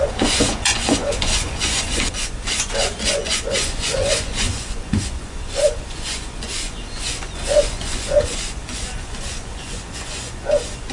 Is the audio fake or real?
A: fake